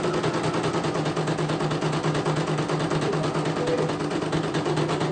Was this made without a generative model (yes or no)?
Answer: yes